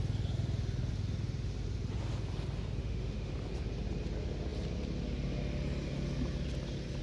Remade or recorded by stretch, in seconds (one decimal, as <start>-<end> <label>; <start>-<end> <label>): 0.0-2.8 recorded; 2.8-3.3 remade; 3.3-7.0 recorded